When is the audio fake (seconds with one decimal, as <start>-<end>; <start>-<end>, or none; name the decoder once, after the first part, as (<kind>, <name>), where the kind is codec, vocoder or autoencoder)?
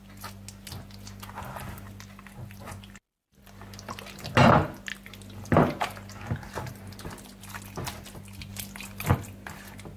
none